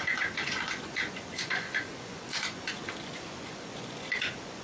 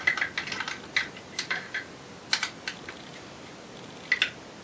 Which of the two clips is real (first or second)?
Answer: second